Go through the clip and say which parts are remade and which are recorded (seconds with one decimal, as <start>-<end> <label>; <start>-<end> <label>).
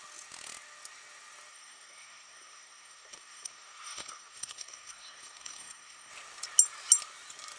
0.0-1.5 recorded; 1.5-6.1 remade; 6.1-7.6 recorded